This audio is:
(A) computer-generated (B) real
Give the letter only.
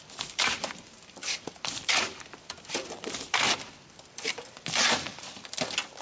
A